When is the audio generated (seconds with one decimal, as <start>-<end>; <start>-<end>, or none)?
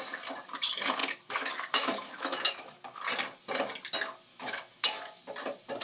1.0-3.0; 4.3-5.2